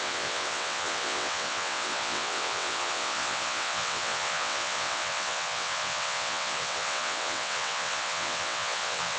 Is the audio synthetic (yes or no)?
yes